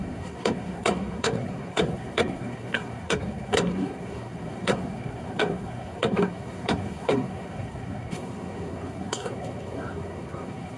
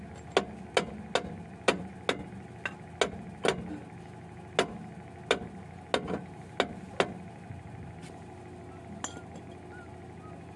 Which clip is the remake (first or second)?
first